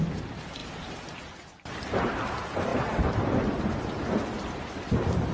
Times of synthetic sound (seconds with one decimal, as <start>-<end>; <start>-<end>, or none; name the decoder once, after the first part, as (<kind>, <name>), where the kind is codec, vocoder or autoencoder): 0.0-5.3 (vocoder, BigVGAN v2)